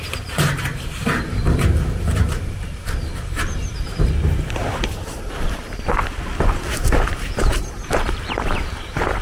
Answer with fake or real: fake